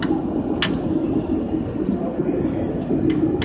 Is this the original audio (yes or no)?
yes